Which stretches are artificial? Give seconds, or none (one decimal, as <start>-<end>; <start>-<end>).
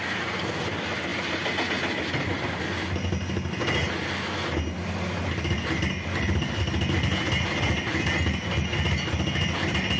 none